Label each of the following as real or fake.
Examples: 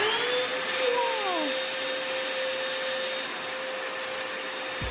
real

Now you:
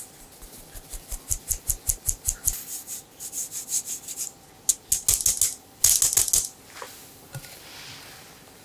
real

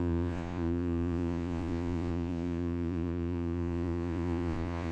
fake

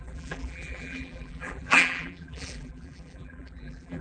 fake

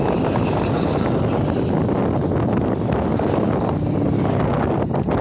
real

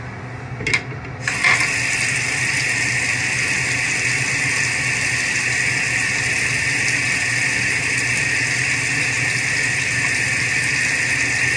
real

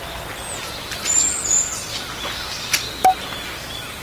real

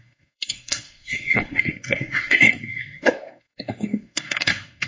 fake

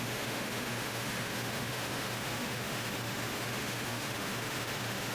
fake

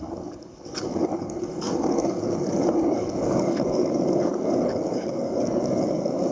fake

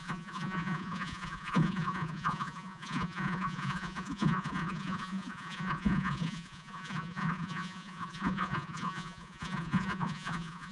fake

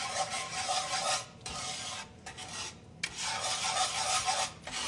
real